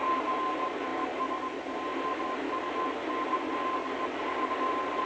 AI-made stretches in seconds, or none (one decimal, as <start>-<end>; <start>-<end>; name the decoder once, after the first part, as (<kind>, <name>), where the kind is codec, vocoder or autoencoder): none